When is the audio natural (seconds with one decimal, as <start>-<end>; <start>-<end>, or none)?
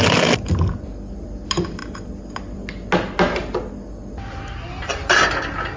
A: 0.0-5.8